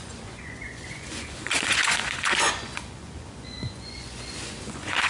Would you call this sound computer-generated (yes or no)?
yes